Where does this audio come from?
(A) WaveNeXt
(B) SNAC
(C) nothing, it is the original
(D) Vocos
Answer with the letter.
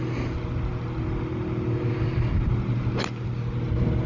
C